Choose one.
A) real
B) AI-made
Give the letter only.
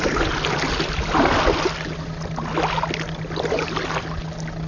A